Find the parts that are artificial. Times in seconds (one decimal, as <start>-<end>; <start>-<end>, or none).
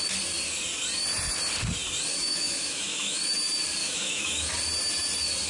2.1-3.2; 3.8-4.5